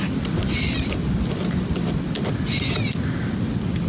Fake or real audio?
real